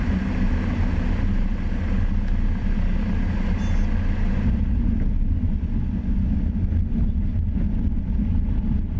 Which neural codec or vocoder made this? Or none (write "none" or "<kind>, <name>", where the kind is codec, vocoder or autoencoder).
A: none